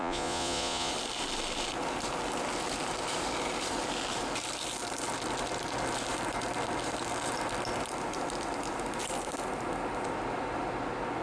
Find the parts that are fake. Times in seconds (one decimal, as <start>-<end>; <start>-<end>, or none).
0.0-0.9